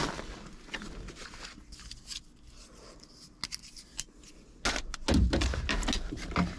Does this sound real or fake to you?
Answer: real